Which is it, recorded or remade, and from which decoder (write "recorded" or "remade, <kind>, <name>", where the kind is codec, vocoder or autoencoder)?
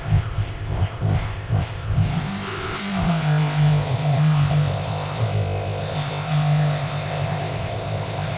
remade, codec, ZipCodec